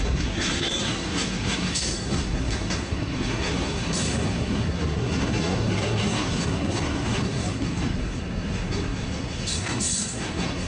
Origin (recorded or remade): remade